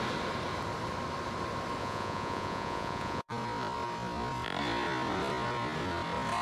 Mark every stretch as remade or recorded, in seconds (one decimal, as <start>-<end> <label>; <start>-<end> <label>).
0.0-1.8 recorded; 1.8-3.3 remade; 3.3-6.4 recorded